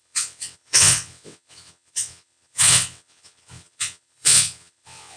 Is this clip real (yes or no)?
no